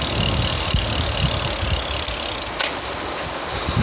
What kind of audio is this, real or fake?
real